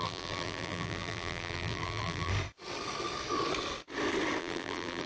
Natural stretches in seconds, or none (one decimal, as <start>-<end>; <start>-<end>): 2.3-4.4